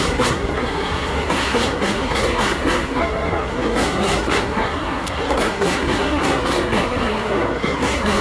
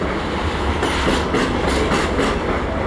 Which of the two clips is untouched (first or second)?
second